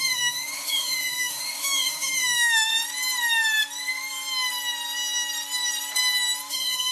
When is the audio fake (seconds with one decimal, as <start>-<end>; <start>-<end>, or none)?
0.0-2.7; 6.5-6.9